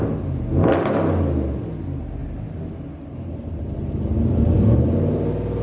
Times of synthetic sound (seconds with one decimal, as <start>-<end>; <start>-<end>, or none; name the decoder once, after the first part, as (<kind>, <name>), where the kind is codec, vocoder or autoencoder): none